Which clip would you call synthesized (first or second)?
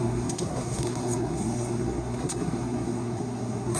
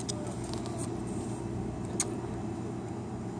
first